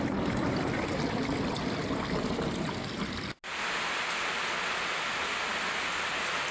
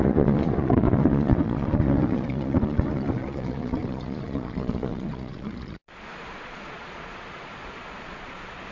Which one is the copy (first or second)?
second